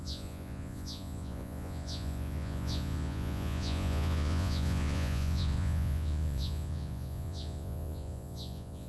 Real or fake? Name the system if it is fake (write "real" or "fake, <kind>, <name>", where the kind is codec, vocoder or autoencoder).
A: fake, vocoder, Vocos